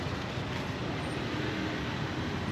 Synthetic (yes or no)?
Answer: no